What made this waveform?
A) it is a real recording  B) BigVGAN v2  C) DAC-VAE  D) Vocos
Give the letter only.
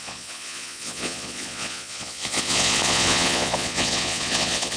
D